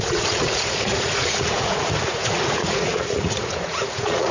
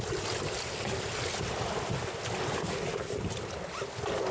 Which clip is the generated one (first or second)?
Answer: first